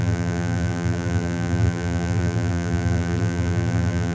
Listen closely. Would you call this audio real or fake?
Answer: fake